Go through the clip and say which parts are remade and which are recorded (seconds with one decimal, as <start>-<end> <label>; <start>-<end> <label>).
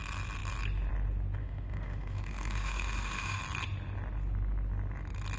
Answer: 0.0-1.4 recorded; 1.4-3.4 remade; 3.4-5.4 recorded